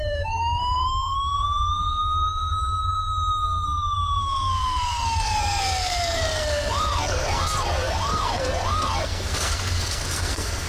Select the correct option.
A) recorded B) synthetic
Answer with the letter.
B